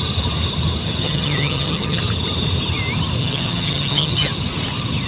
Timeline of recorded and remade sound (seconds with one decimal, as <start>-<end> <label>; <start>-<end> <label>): 0.0-1.0 recorded; 1.0-2.0 remade; 2.0-3.2 recorded; 3.2-4.3 remade; 4.3-5.1 recorded